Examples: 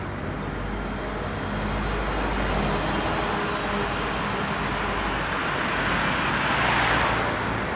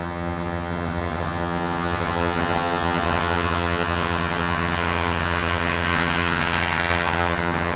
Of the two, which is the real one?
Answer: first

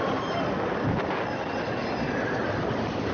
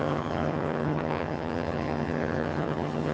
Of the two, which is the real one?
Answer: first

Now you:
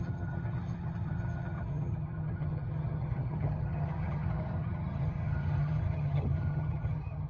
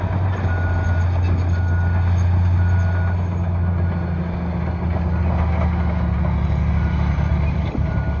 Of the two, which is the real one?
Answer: second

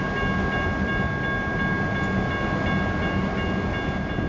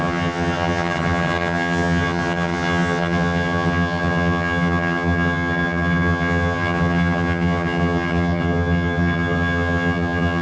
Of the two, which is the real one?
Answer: first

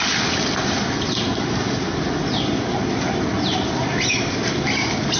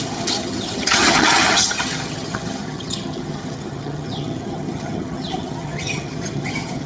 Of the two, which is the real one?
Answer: first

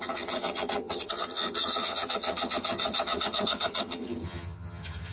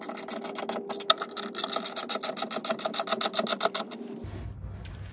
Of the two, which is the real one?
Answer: second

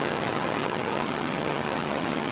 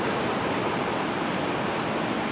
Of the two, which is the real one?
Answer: second